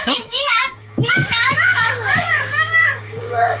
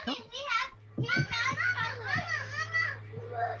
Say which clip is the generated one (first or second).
first